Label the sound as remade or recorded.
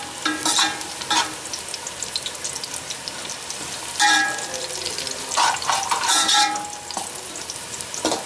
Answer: recorded